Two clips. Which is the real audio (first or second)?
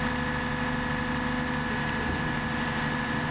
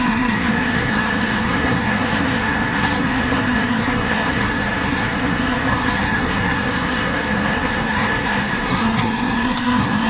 first